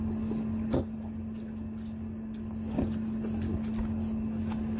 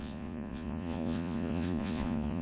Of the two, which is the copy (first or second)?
second